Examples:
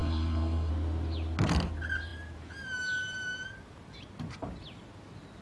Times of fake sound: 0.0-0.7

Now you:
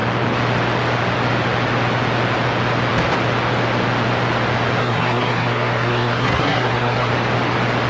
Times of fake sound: 4.8-7.1